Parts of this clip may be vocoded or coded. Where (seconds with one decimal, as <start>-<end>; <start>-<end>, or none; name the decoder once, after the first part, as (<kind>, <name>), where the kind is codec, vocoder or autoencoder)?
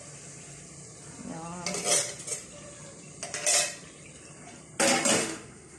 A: 5.2-5.8 (autoencoder, DAC-VAE)